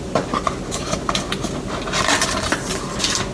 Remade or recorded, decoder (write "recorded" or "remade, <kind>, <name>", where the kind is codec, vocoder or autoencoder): recorded